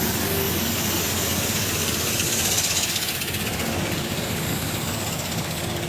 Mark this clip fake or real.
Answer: fake